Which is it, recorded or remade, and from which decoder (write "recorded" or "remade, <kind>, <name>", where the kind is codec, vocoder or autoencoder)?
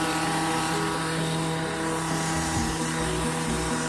recorded